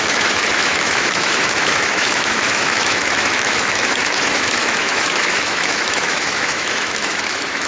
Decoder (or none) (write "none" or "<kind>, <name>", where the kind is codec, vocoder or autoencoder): autoencoder, DAC-VAE